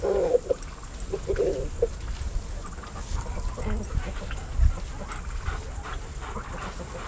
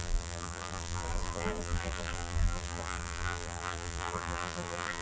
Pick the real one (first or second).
first